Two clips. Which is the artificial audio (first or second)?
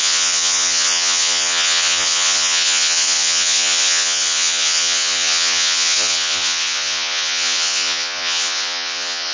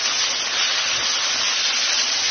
first